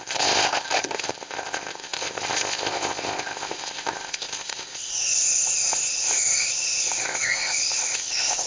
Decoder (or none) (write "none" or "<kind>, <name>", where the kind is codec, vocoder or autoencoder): codec, ZipCodec